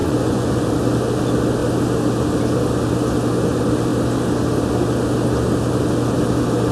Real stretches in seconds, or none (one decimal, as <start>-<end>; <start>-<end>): 0.7-6.7